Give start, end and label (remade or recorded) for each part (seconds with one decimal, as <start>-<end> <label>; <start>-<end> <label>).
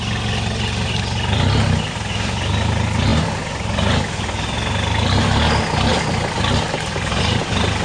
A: 0.0-7.8 recorded